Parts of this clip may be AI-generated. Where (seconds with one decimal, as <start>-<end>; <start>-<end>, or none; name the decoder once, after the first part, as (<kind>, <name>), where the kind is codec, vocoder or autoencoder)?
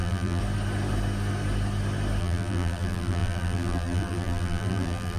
0.0-0.4 (vocoder, BigVGAN v2); 2.2-5.2